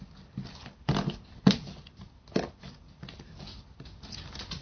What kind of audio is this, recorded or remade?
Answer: recorded